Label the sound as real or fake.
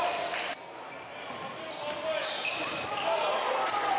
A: real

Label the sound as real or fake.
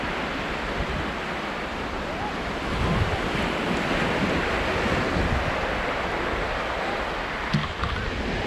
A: real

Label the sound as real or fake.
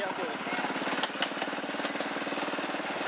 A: real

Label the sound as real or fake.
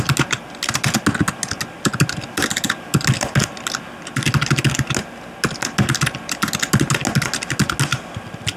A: real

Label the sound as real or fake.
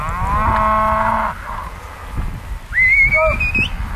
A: real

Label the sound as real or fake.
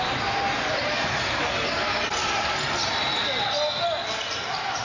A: real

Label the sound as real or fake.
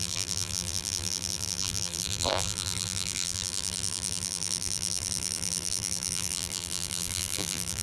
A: fake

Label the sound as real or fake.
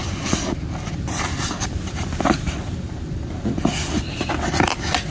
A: fake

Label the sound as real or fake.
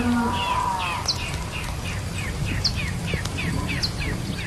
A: real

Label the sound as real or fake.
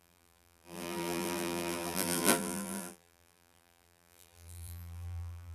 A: fake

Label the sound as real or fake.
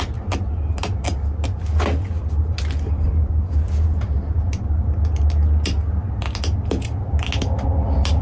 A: real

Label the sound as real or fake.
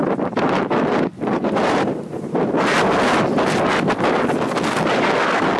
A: real